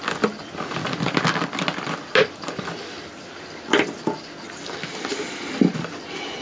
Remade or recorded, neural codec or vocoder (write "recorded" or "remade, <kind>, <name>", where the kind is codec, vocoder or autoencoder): recorded